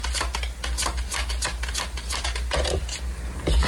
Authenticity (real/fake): real